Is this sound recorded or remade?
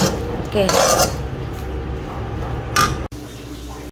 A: recorded